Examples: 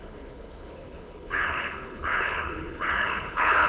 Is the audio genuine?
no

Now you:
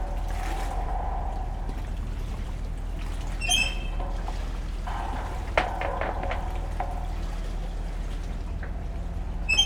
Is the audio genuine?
yes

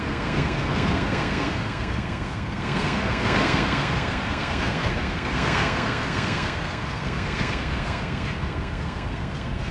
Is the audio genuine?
no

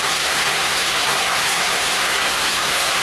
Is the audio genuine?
no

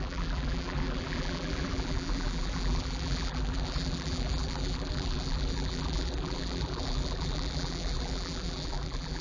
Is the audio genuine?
no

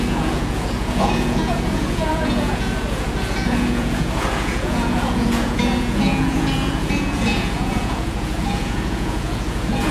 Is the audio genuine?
no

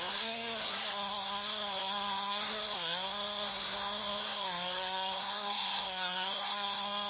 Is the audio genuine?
no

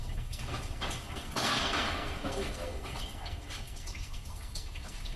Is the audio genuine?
no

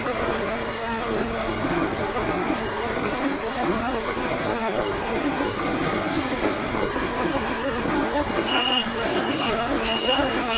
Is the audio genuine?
no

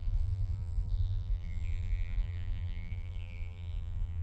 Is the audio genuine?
no